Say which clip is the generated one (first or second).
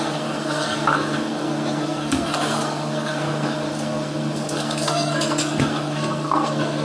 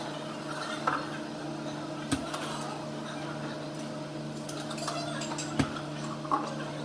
first